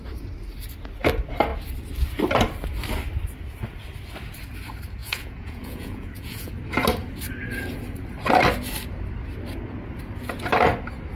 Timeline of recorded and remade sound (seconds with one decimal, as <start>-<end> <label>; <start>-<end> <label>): 0.0-5.0 recorded; 5.0-6.5 remade; 6.5-11.2 recorded